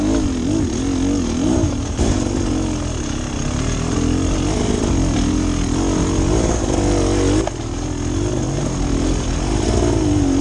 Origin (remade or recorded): recorded